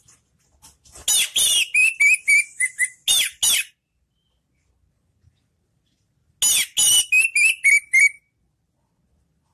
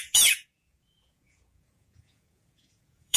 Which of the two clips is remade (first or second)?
second